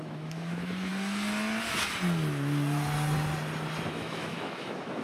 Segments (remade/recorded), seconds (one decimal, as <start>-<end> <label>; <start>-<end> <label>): 0.0-0.9 remade; 0.9-3.9 recorded; 3.9-5.0 remade